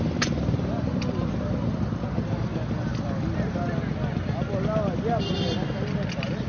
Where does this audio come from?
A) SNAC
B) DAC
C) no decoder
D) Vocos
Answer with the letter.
C